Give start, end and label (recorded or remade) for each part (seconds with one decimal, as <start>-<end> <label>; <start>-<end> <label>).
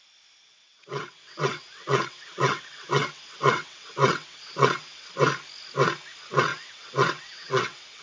0.0-0.4 recorded; 0.4-5.2 remade; 5.2-6.5 recorded; 6.5-8.0 remade